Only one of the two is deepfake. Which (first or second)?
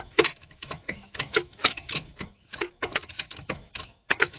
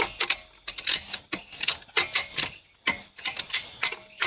first